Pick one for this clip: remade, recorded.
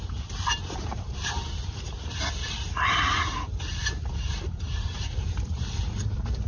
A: remade